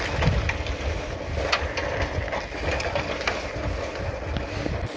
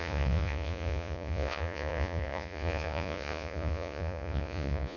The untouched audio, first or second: first